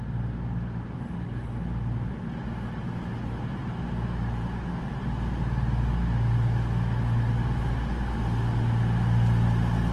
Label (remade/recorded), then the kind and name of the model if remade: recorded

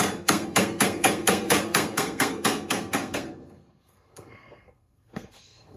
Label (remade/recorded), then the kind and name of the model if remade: remade, codec, SNAC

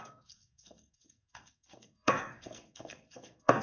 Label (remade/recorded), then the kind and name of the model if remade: remade, codec, SNAC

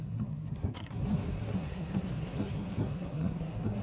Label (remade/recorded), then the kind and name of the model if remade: remade, codec, SNAC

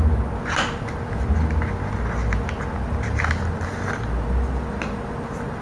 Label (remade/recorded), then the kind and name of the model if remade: recorded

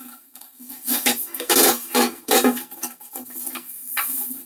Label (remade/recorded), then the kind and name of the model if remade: remade, codec, SNAC